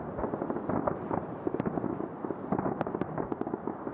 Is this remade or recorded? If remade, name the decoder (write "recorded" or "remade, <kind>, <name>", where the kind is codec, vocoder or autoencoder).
recorded